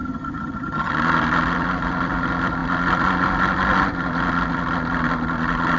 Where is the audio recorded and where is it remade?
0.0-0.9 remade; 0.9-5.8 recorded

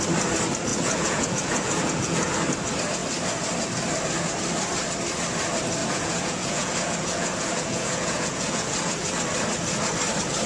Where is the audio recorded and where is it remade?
0.0-0.7 recorded; 0.7-2.3 remade; 2.3-5.8 recorded; 5.8-9.1 remade; 9.1-10.5 recorded

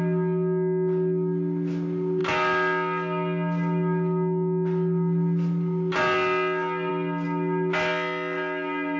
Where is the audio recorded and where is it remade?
0.0-9.0 recorded

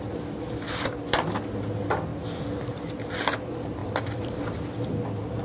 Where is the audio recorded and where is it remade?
0.0-3.8 recorded; 3.8-4.4 remade; 4.4-5.4 recorded

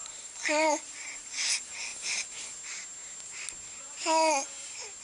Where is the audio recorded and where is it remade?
0.0-1.9 remade; 1.9-5.0 recorded